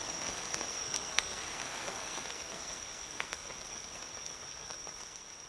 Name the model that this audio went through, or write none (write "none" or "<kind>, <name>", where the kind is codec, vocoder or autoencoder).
codec, SNAC